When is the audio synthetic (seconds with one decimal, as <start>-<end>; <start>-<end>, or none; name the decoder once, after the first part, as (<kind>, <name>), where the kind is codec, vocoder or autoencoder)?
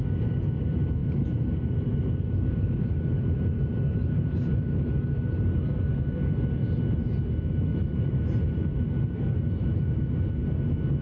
1.0-4.9 (vocoder, BigVGAN v2); 7.7-10.3